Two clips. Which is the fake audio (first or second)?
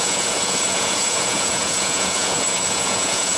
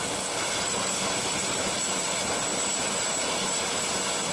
first